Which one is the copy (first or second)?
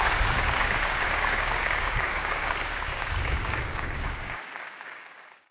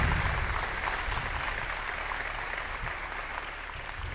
first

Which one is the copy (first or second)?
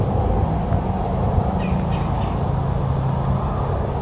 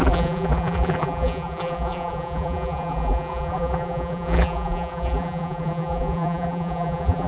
second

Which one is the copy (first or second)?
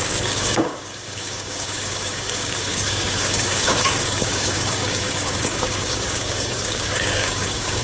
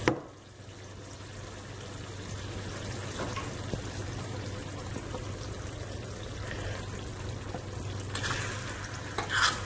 first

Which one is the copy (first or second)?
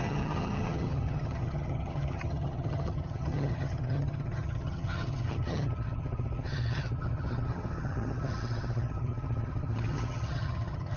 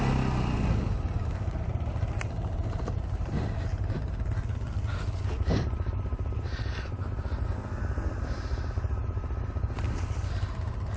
first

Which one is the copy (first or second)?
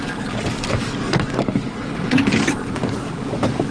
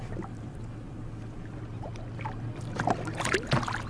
first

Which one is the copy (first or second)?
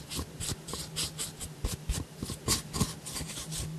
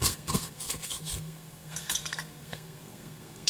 second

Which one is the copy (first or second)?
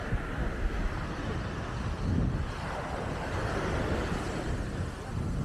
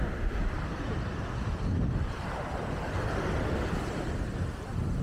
second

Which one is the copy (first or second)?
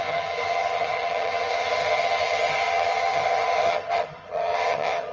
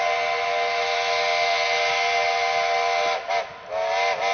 first